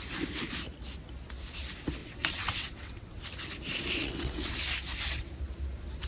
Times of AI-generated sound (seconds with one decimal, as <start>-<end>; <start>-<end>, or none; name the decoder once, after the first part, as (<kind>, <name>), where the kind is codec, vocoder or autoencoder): 2.0-3.2 (vocoder, WaveNeXt); 4.0-4.5